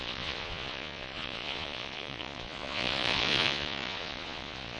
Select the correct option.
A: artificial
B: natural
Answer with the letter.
A